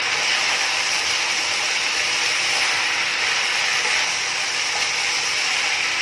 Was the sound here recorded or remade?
recorded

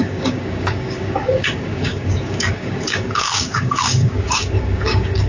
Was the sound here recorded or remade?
remade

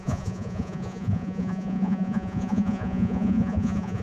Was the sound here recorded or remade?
remade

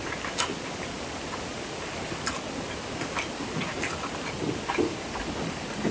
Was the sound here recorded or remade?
recorded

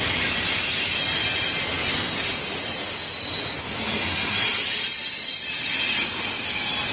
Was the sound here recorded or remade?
recorded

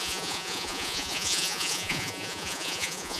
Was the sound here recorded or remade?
remade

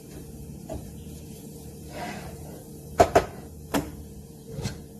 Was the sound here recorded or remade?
remade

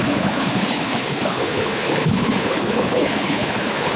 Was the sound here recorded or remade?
remade